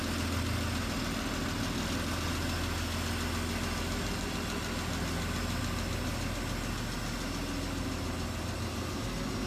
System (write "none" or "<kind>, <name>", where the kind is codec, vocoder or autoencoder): none